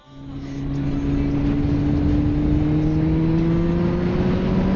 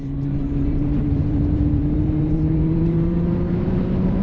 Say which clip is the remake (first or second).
second